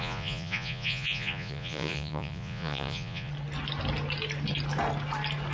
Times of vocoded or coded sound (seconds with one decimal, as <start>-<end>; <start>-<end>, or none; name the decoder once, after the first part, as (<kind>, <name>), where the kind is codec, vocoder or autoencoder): 0.0-3.3 (vocoder, Vocos)